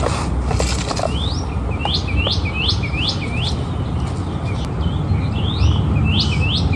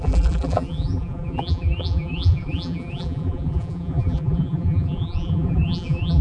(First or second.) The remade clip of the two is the second